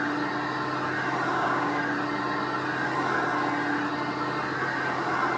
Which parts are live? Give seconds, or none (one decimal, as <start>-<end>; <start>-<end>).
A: 0.0-1.3; 1.8-5.4

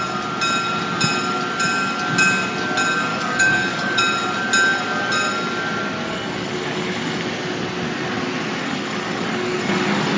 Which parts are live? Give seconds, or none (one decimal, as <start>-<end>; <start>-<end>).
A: 0.0-3.1; 4.0-6.1; 7.2-8.6

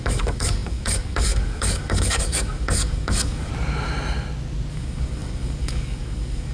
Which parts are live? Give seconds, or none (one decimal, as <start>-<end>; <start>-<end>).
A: 3.5-4.7

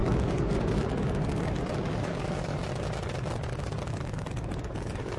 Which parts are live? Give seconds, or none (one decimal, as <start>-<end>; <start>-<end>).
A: 2.6-3.8